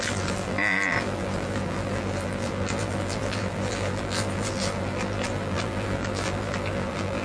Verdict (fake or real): fake